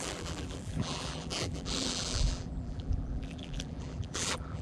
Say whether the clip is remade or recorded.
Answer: remade